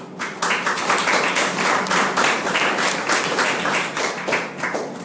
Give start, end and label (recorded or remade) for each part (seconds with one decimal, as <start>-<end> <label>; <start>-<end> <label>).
0.0-1.0 recorded; 1.0-4.0 remade; 4.0-5.0 recorded